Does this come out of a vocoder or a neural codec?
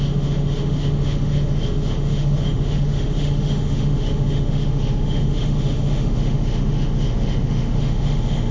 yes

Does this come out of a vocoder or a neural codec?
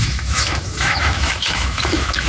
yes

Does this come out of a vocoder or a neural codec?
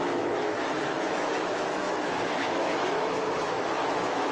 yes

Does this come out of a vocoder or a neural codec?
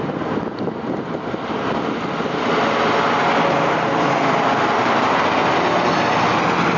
no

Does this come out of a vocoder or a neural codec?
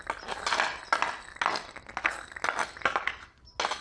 no